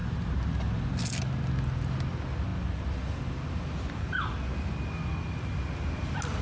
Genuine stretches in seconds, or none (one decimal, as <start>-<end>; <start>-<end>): 0.0-6.4